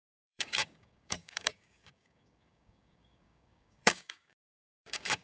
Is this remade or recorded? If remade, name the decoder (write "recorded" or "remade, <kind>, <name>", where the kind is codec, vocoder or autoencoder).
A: remade, codec, DAC